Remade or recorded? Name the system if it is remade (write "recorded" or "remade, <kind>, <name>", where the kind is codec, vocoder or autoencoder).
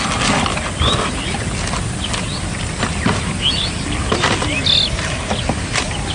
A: recorded